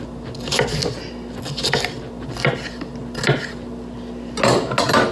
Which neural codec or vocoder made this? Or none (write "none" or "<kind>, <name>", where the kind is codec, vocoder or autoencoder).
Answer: none